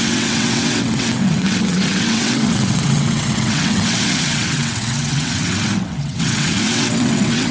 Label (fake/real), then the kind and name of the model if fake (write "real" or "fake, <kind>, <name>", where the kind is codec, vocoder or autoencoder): fake, vocoder, WaveNeXt